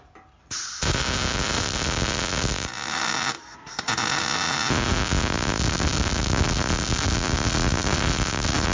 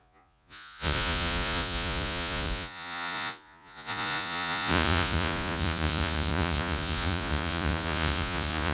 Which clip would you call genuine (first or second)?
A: first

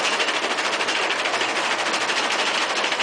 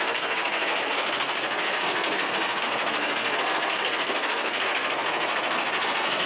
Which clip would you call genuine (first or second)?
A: first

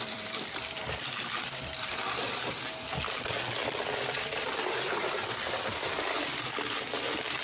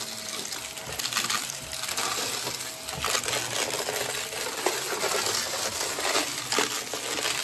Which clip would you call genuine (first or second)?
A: second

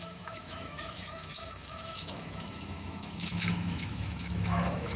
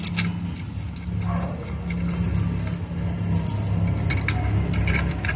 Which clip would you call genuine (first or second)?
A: second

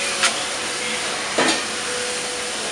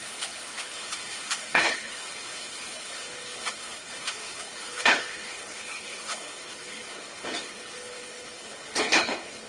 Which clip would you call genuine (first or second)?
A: first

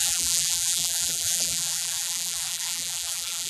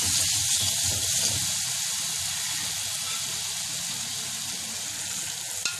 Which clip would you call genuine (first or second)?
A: second